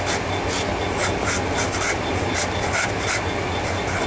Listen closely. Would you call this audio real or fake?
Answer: real